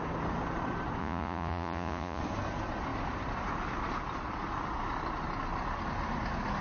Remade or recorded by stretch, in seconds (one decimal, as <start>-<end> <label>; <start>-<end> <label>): 0.0-1.0 recorded; 1.0-2.2 remade; 2.2-6.6 recorded

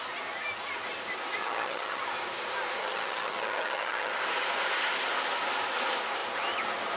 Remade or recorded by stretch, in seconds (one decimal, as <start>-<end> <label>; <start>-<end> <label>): 0.0-1.4 recorded; 1.4-2.0 remade; 2.0-2.8 recorded; 2.8-4.1 remade; 4.1-7.0 recorded

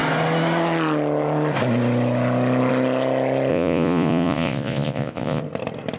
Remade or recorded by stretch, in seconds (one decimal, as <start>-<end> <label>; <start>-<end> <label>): 0.0-3.5 recorded; 3.5-5.4 remade; 5.4-6.0 recorded

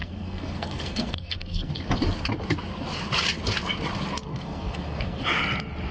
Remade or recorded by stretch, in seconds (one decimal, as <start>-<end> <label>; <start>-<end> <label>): 0.0-1.7 remade; 1.7-4.3 recorded; 4.3-5.2 remade; 5.2-5.9 recorded

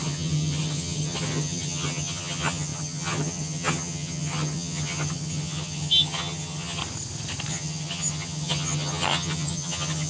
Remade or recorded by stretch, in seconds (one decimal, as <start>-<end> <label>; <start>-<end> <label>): 0.0-6.8 remade; 6.8-7.5 recorded; 7.5-10.1 remade

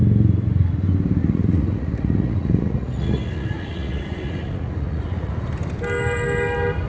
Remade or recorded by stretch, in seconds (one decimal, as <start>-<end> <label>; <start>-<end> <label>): 0.0-1.2 recorded; 1.2-5.3 remade; 5.3-6.9 recorded

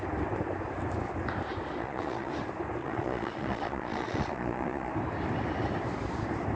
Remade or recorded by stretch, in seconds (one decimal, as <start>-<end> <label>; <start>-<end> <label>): 0.0-1.8 recorded; 1.8-2.3 remade; 2.3-2.8 recorded; 2.8-4.9 remade; 4.9-6.6 recorded

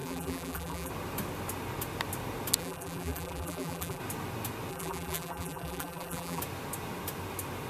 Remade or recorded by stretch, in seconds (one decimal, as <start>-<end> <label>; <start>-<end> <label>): 0.0-0.9 remade; 0.9-2.6 recorded; 2.6-4.0 remade; 4.0-4.7 recorded; 4.7-6.4 remade; 6.4-7.7 recorded